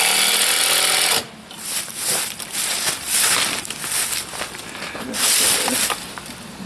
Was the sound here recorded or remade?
recorded